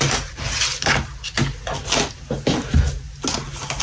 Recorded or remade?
recorded